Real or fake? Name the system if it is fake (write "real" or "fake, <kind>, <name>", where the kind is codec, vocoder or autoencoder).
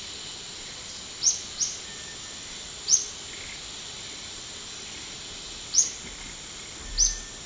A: real